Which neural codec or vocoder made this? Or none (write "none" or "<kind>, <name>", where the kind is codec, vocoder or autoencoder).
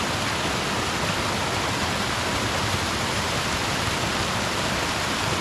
none